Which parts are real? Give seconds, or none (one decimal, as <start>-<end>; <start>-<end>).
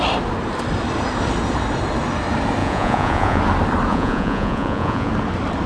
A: 0.0-2.6; 3.4-3.9; 5.1-5.7